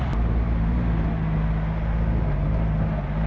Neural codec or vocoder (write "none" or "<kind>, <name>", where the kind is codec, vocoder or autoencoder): none